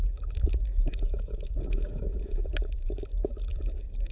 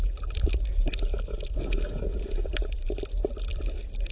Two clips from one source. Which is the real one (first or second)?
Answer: second